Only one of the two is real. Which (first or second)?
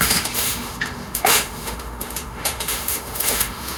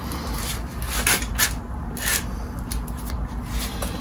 second